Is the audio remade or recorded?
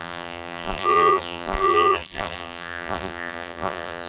remade